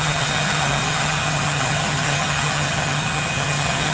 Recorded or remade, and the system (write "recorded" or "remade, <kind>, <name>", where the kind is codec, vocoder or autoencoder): remade, vocoder, HiFi-GAN